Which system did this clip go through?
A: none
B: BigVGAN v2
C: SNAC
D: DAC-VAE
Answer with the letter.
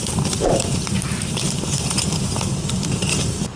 B